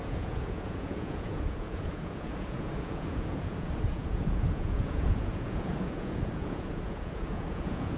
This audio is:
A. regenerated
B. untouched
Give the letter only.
A